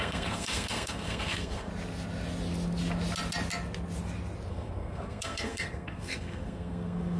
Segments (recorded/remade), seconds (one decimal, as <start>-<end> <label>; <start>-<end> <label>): 0.0-1.7 remade; 1.7-4.5 recorded; 4.5-7.2 remade